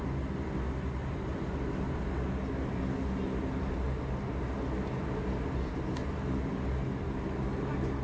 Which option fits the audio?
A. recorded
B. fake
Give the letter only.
A